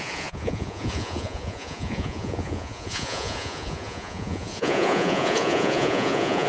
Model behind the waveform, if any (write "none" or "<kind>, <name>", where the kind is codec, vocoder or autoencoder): vocoder, Vocos